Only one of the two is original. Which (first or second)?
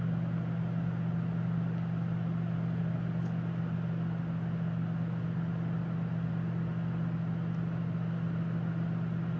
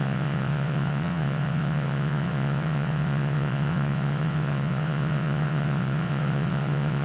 first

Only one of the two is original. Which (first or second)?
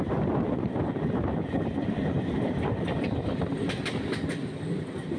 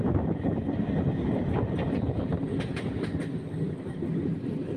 second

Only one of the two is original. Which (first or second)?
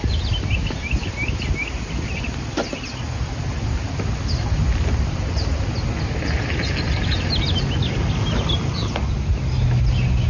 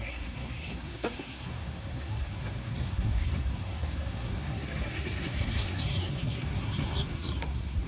first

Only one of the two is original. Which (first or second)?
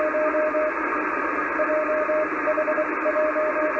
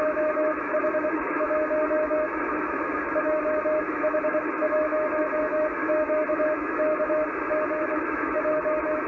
first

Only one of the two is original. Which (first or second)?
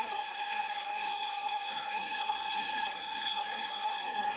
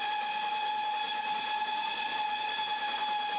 second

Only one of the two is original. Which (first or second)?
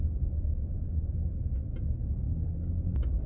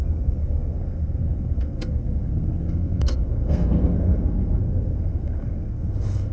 first